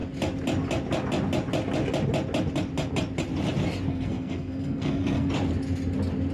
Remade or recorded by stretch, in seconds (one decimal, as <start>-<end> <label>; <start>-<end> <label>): 0.0-3.9 recorded; 3.9-5.3 remade; 5.3-6.3 recorded

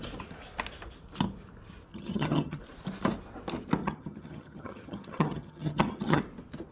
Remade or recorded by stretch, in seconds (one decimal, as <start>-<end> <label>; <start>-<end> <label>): 0.0-1.9 recorded; 1.9-2.6 remade; 2.6-3.8 recorded; 3.8-6.2 remade; 6.2-6.7 recorded